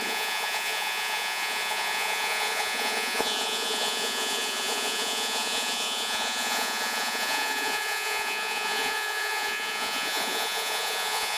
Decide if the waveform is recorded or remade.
remade